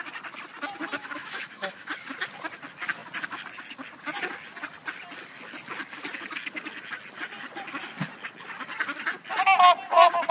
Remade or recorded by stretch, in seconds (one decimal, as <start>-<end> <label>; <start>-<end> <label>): 0.0-1.0 recorded; 1.0-1.9 remade; 1.9-10.3 recorded